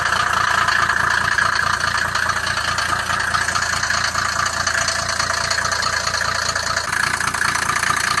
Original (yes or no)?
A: yes